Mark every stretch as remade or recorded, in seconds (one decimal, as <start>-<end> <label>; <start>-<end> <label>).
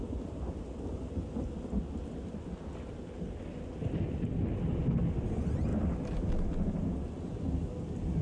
0.0-8.2 recorded